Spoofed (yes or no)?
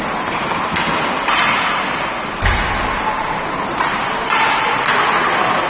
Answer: no